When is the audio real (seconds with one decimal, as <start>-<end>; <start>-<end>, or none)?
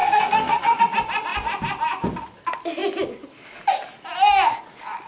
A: 0.8-5.1